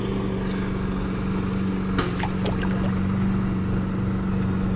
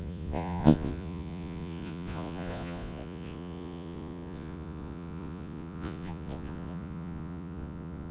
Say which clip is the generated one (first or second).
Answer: second